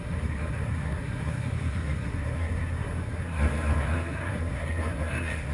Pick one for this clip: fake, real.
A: fake